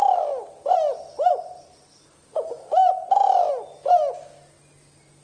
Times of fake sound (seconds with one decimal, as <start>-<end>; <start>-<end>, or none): none